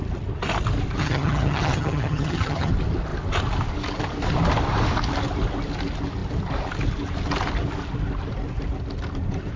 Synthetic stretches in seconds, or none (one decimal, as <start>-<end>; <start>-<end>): 1.0-2.7